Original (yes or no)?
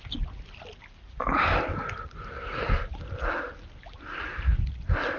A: yes